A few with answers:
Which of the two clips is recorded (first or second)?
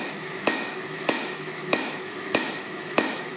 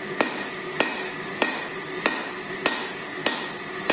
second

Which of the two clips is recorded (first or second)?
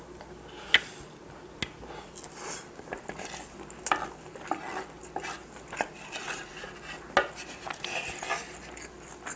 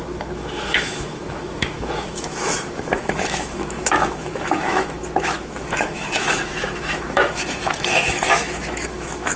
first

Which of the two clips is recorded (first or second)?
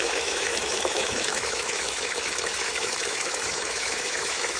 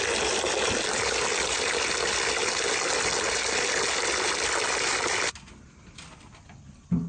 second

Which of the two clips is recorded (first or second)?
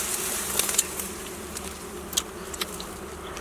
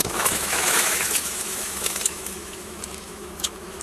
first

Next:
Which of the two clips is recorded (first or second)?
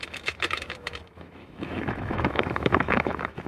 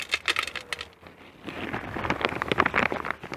second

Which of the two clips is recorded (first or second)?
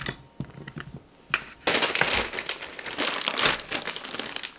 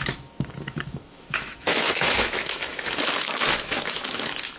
first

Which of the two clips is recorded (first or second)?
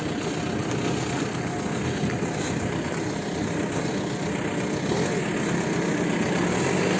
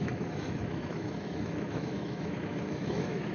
first